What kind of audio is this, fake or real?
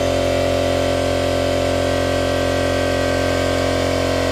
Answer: real